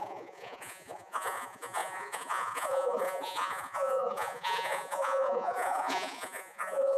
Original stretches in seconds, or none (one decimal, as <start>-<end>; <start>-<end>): none